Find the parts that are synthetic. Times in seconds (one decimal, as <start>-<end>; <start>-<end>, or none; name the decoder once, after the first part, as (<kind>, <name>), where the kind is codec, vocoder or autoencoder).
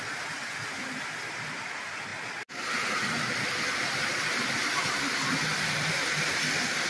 none